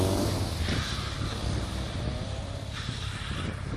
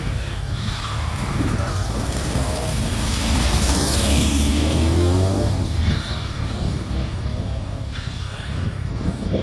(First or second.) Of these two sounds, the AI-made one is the second